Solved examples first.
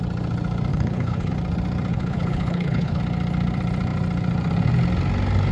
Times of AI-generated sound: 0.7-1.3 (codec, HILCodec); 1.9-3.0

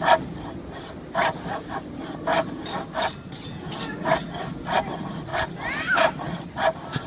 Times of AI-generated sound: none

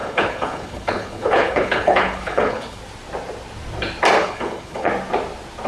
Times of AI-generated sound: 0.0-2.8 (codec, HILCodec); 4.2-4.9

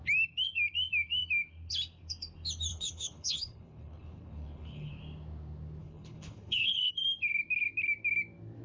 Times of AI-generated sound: 2.7-4.9 (codec, HILCodec); 5.8-6.9

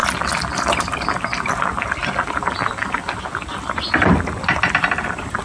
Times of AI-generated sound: none

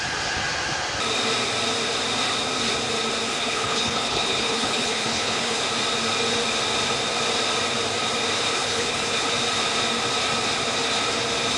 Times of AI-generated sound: 3.3-5.6 (codec, HILCodec); 8.5-9.3

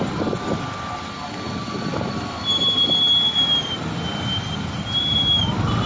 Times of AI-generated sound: none